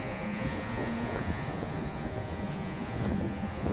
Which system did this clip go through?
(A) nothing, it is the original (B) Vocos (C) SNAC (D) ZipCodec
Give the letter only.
B